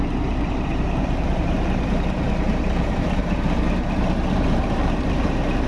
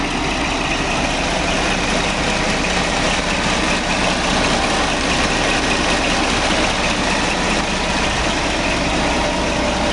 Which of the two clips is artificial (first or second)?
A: first